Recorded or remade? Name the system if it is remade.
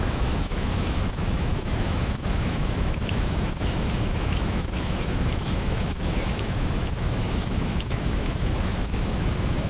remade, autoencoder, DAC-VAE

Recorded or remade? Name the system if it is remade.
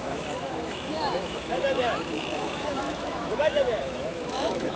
remade, autoencoder, DAC-VAE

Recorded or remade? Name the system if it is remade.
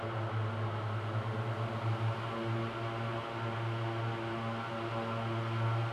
recorded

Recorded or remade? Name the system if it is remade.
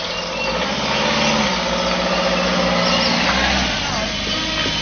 recorded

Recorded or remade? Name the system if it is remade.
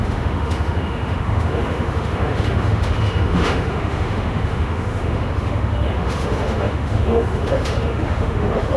remade, autoencoder, DAC-VAE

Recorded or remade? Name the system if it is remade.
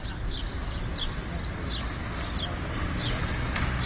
recorded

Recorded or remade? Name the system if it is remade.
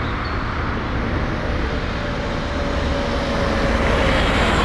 recorded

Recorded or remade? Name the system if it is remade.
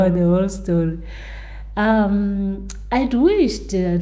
remade, autoencoder, DAC-VAE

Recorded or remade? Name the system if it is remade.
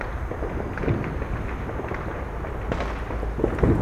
recorded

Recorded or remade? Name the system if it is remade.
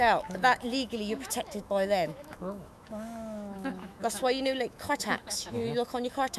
remade, autoencoder, DAC-VAE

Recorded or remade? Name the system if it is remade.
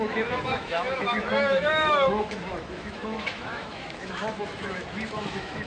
remade, autoencoder, DAC-VAE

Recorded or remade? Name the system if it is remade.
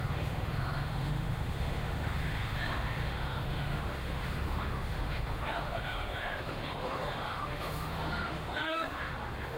remade, autoencoder, DAC-VAE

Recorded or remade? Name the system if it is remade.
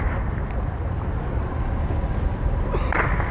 recorded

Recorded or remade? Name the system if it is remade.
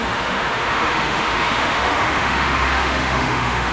remade, autoencoder, DAC-VAE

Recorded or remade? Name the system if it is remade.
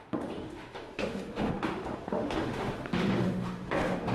remade, autoencoder, DAC-VAE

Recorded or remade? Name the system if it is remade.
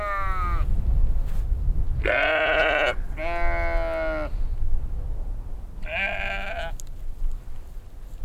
recorded